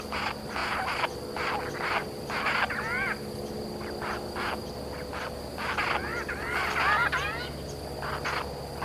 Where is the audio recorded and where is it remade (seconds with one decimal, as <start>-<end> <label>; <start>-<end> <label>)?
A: 0.0-8.8 recorded